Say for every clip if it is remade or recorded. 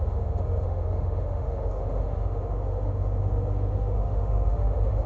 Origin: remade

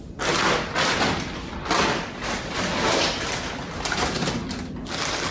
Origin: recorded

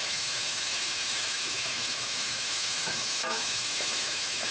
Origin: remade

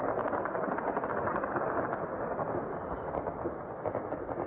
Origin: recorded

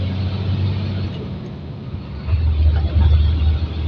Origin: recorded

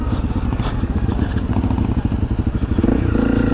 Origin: recorded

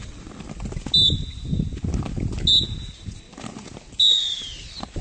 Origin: recorded